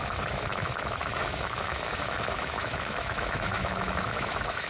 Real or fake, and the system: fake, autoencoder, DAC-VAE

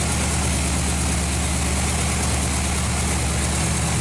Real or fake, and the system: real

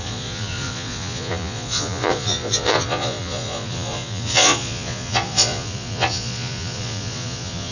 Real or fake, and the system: fake, vocoder, Vocos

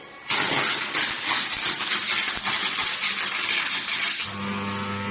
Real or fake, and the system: real